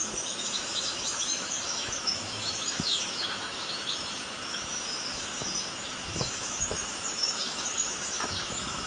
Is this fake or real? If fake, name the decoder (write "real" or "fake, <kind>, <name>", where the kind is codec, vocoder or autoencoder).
fake, autoencoder, DAC-VAE